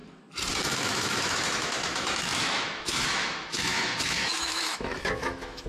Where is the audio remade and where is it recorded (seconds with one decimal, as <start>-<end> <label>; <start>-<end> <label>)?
0.0-0.5 recorded; 0.5-5.7 remade